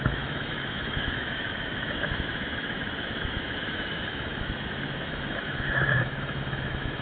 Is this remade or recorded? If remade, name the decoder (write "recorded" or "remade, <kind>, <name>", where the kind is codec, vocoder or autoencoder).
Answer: remade, autoencoder, DAC-VAE